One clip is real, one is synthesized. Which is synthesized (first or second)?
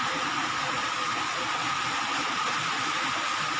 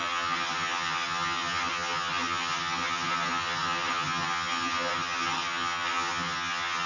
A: second